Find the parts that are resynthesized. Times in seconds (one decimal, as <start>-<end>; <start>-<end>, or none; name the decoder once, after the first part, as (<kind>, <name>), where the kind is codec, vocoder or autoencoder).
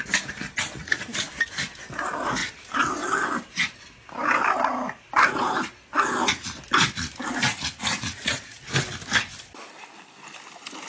0.7-1.3 (vocoder, Vocos); 7.5-8.6